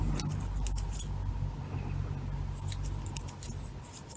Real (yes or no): yes